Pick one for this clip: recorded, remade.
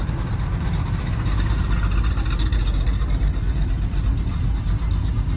remade